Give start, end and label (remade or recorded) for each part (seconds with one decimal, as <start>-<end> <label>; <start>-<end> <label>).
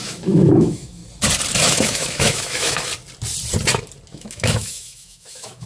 0.0-1.0 remade; 1.0-1.6 recorded; 1.6-2.9 remade; 2.9-4.1 recorded; 4.1-5.7 remade